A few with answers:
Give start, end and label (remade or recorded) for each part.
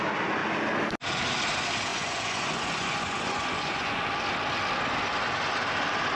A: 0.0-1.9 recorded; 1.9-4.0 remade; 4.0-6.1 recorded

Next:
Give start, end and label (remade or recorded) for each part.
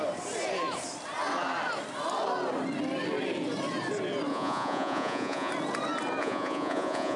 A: 0.0-4.3 recorded; 4.3-5.5 remade; 5.5-6.2 recorded; 6.2-7.2 remade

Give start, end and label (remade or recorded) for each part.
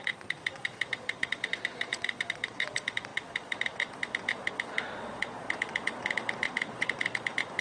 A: 0.0-7.6 remade